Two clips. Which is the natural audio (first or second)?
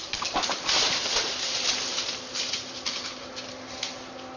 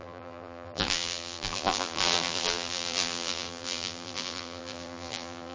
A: first